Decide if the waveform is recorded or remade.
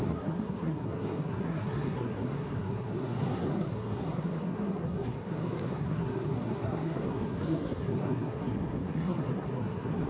remade